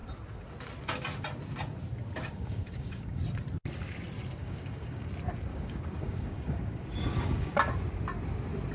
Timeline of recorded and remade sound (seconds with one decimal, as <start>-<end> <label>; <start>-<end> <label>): 0.0-2.3 recorded; 2.3-3.2 remade; 3.2-4.4 recorded; 4.4-5.1 remade; 5.1-5.5 recorded; 5.5-7.7 remade; 7.7-8.7 recorded